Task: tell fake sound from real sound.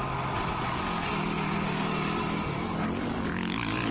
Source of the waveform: real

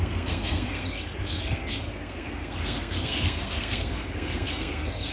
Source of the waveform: fake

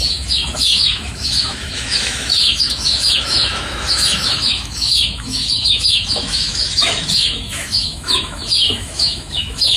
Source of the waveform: fake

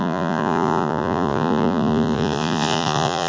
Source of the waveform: fake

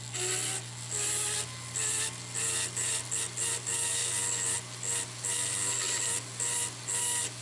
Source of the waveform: real